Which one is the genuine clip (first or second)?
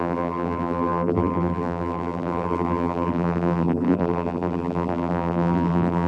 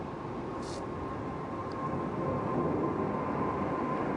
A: second